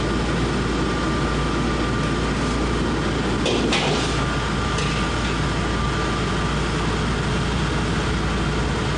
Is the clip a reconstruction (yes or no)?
no